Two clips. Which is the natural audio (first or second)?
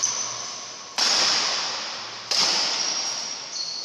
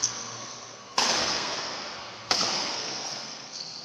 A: first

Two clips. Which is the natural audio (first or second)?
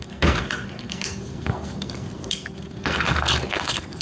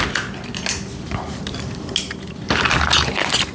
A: second